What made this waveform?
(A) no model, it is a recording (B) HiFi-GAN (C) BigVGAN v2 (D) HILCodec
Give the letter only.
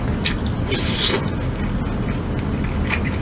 A